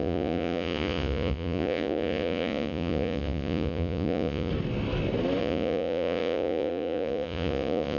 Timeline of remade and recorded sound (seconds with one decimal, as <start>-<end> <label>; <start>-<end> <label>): 0.0-4.5 remade; 4.5-5.4 recorded; 5.4-8.0 remade